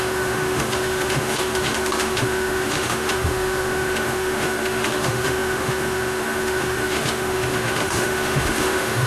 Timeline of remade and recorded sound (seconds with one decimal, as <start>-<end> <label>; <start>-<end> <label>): 0.0-9.1 remade